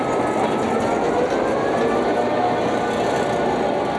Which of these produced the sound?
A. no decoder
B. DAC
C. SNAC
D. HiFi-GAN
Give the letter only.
A